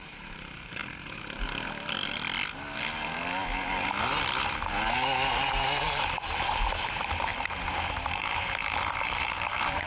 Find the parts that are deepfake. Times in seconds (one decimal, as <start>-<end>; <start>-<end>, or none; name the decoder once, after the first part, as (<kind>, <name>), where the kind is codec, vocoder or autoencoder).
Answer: 0.0-0.8 (vocoder, BigVGAN v2); 5.8-7.3; 7.9-9.9